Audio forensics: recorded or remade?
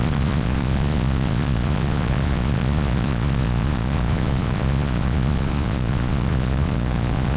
remade